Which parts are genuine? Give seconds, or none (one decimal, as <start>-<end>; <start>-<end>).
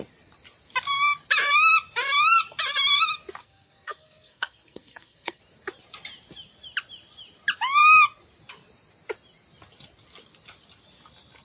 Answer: 0.0-3.4; 5.4-11.4